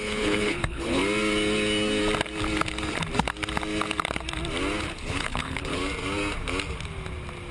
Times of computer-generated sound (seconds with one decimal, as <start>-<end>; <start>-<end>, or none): 0.0-1.0; 4.8-5.8